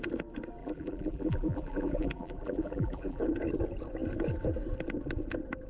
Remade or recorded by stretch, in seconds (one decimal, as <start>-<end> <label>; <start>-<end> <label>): 0.0-0.6 recorded; 0.6-3.2 remade; 3.2-5.7 recorded